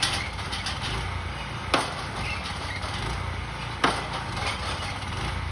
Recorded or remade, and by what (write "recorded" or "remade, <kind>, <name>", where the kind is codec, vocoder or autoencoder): recorded